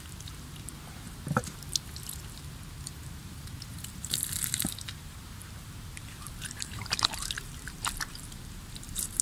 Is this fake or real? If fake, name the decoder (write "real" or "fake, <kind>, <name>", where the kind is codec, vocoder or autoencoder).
fake, vocoder, BigVGAN v2